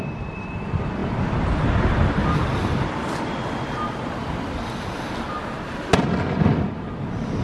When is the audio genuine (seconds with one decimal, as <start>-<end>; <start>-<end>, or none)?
0.0-7.4